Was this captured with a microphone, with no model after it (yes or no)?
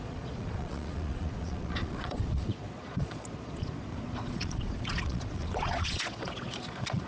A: no